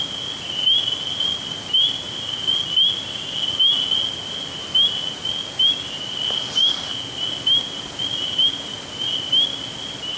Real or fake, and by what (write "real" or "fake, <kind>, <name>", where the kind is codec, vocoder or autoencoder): real